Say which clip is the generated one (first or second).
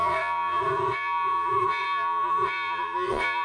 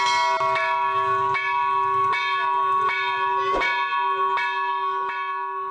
first